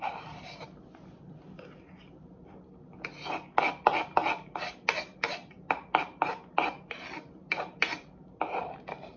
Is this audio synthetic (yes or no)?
no